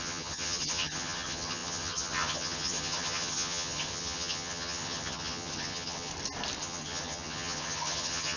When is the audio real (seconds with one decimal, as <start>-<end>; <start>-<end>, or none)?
6.1-6.6